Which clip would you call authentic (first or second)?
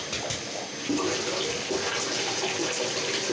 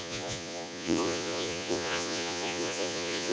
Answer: first